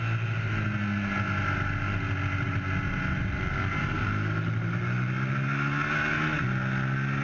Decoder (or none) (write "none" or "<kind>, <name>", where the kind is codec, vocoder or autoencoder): none